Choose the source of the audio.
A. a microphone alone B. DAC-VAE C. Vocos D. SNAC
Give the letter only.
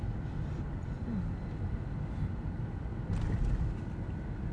A